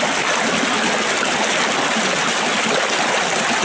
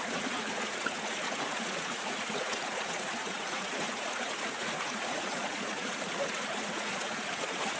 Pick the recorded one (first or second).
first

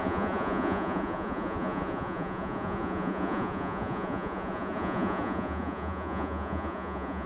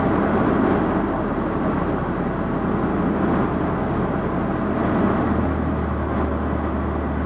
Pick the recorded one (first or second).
second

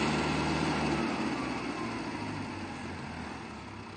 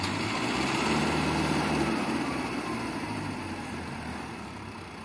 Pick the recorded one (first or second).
first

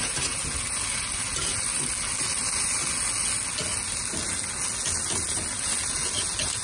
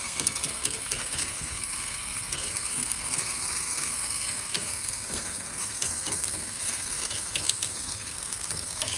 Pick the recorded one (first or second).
first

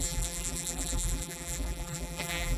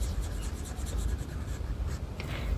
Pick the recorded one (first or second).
second